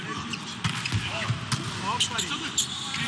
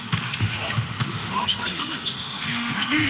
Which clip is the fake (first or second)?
second